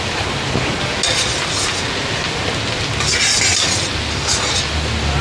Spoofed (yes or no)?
no